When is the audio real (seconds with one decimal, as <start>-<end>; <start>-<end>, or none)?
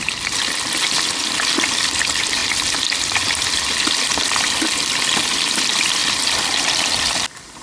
0.0-7.6